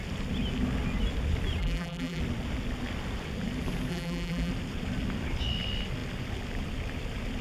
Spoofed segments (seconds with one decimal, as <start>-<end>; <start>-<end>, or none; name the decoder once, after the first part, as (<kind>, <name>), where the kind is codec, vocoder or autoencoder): 1.6-2.2 (vocoder, BigVGAN v2); 3.9-4.5